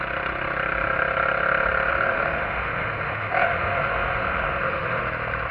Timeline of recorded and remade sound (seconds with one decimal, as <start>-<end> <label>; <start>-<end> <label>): 0.0-1.9 recorded; 1.9-5.0 remade; 5.0-5.5 recorded